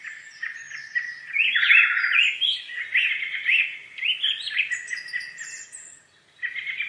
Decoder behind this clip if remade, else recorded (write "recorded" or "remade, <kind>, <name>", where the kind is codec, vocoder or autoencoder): recorded